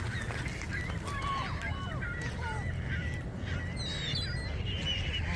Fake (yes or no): no